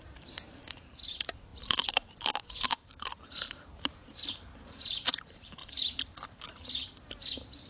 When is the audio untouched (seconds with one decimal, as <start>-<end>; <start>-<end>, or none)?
5.6-7.7